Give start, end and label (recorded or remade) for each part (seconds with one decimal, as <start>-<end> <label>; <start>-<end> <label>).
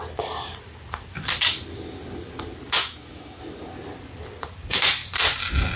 0.0-2.8 recorded; 2.8-3.4 remade; 3.4-5.8 recorded